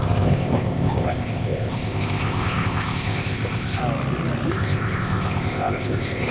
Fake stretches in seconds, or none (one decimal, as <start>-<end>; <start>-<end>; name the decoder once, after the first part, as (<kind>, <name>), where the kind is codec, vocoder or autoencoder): 0.0-3.8 (codec, ZipCodec); 4.5-6.3